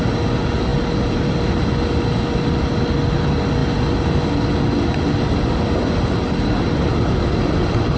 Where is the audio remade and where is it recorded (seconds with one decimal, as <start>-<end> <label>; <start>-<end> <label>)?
0.0-8.0 recorded